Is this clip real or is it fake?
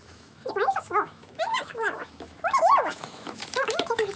fake